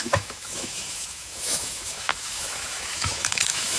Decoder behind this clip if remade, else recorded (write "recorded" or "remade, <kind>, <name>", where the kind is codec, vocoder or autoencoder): remade, autoencoder, DAC-VAE